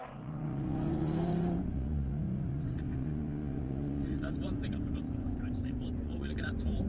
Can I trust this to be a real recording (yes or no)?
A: no